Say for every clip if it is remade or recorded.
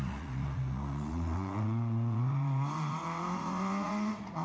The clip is remade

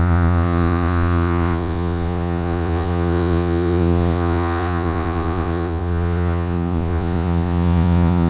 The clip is remade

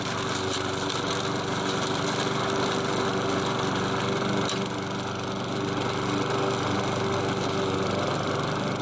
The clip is recorded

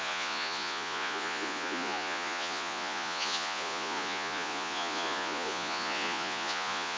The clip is remade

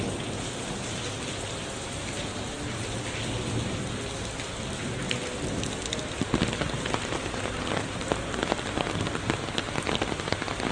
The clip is recorded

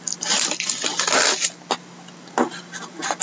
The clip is recorded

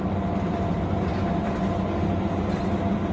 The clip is recorded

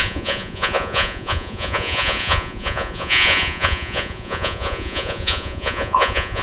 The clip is remade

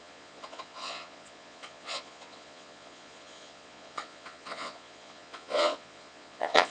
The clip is remade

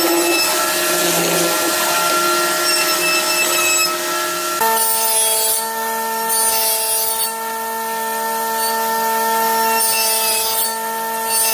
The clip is recorded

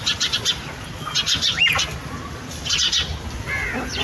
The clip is recorded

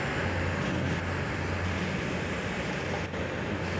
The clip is recorded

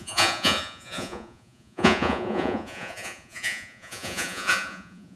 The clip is remade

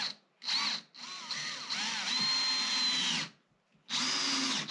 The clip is recorded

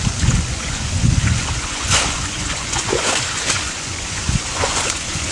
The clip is remade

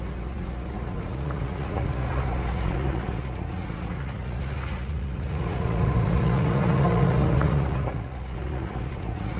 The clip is remade